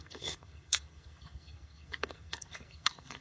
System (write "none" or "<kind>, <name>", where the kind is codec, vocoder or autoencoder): codec, SNAC